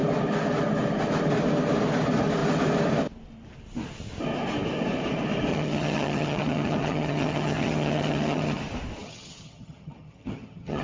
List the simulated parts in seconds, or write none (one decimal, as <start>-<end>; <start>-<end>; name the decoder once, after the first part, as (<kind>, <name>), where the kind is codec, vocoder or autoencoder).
5.5-8.6 (vocoder, HiFi-GAN); 9.0-10.8